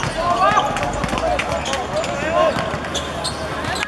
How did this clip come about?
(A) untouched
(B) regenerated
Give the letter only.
A